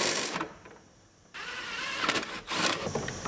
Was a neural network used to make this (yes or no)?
yes